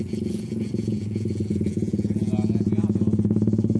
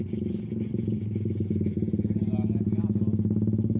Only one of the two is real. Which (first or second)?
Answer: second